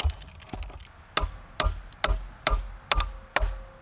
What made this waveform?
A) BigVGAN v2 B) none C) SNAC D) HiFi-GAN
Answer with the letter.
B